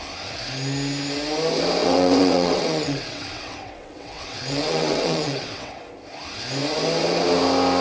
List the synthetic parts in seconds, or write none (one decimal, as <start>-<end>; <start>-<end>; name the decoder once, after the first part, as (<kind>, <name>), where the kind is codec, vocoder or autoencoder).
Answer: 1.8-5.8 (vocoder, WaveNeXt)